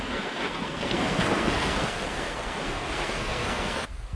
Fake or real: fake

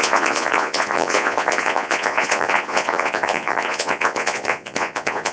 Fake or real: fake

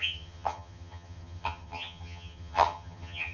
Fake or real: fake